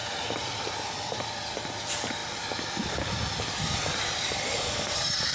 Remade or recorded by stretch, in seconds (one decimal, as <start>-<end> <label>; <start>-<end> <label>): 0.0-5.3 remade